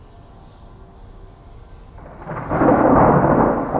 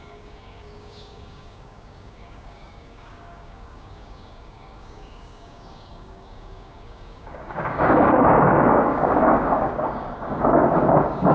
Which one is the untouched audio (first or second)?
first